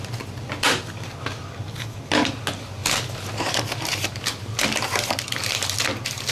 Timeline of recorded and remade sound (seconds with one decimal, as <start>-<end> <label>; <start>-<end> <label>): 0.0-6.3 recorded